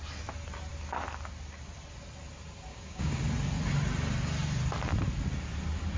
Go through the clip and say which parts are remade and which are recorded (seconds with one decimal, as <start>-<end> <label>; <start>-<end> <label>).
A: 0.0-2.7 recorded; 2.7-3.2 remade; 3.2-6.0 recorded